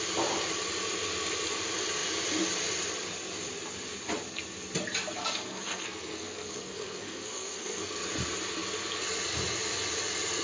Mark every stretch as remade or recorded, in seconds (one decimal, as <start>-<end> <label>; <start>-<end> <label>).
0.0-5.2 recorded; 5.2-8.0 remade; 8.0-10.4 recorded